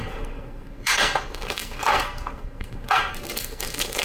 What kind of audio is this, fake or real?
fake